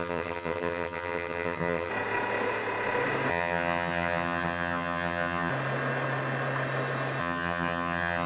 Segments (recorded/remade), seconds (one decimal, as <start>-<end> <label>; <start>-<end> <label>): 0.0-1.9 remade; 1.9-3.3 recorded; 3.3-5.5 remade; 5.5-7.2 recorded; 7.2-8.3 remade